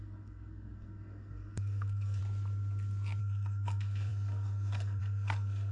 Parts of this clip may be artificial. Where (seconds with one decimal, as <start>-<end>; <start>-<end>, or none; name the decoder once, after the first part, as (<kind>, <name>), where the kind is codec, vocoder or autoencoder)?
0.0-2.2 (codec, SNAC); 3.2-5.7